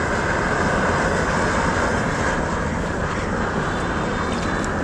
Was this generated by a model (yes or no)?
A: no